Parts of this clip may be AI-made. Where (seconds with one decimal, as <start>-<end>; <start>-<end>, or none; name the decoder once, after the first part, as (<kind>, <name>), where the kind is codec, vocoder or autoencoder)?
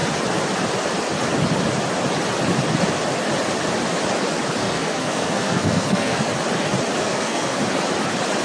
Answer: 4.6-6.3 (codec, SNAC); 7.0-7.6